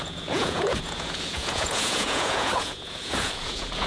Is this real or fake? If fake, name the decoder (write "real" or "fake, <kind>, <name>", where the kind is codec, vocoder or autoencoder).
fake, vocoder, Vocos